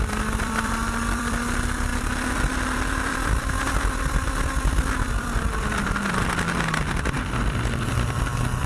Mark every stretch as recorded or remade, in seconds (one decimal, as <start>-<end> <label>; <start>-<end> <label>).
0.0-8.7 remade